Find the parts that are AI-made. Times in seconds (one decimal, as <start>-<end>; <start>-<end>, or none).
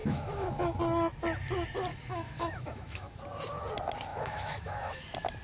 0.0-0.8; 1.9-3.2; 4.1-5.0